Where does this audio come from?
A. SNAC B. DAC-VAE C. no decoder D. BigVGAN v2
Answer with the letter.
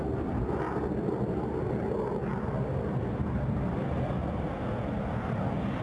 C